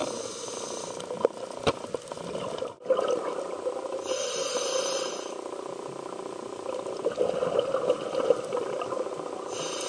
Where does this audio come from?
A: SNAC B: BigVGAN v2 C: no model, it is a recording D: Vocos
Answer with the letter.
C